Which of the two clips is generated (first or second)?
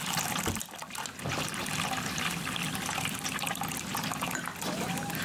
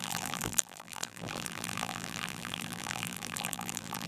second